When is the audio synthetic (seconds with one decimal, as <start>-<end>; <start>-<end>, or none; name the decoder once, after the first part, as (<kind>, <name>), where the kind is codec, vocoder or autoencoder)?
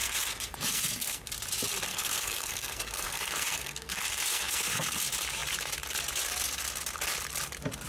0.0-1.3 (codec, SNAC); 1.9-5.0